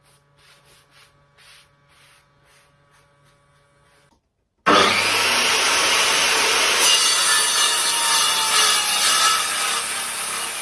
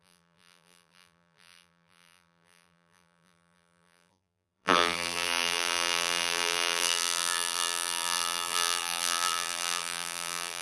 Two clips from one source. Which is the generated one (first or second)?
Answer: second